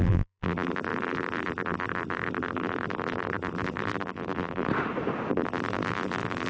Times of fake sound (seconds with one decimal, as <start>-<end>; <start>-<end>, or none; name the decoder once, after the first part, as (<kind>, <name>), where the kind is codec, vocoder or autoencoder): 0.0-4.7 (vocoder, BigVGAN v2); 5.3-6.5